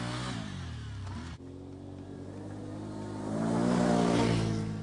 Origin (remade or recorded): recorded